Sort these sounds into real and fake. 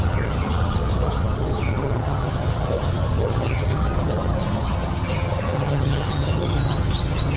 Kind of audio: fake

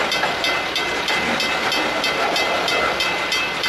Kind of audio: real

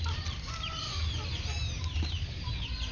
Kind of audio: real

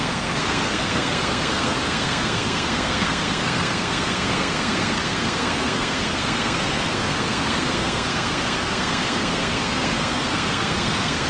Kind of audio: fake